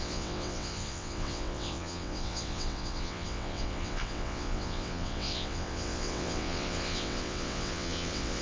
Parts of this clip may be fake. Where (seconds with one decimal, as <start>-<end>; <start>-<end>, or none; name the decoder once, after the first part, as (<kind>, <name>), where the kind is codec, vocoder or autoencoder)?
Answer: 0.0-8.4 (vocoder, WaveNeXt)